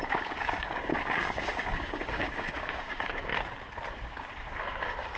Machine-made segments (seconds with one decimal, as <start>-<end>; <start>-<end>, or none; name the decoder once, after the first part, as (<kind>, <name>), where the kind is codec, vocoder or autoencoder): 0.0-3.3 (codec, DAC); 3.9-5.2